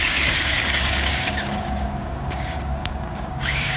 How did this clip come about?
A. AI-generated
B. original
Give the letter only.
A